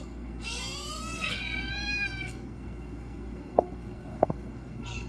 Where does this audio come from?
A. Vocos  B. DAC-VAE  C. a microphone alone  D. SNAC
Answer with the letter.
D